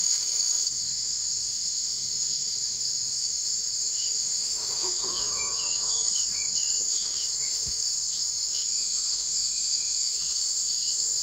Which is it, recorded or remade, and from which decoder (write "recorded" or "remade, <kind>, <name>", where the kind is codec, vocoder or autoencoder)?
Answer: remade, autoencoder, DAC-VAE